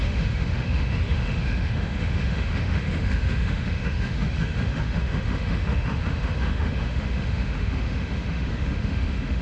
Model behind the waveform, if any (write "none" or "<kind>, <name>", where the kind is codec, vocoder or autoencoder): autoencoder, DAC-VAE